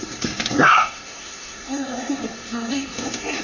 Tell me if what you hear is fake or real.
fake